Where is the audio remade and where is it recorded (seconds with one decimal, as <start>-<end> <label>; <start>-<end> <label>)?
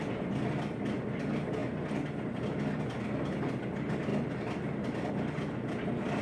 0.0-1.6 remade; 1.6-3.2 recorded; 3.2-6.2 remade